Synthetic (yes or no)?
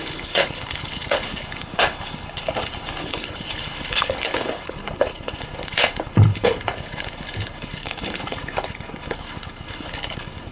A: yes